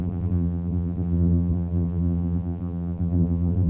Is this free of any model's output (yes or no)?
no